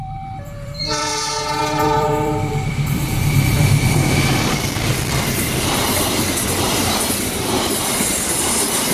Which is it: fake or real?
fake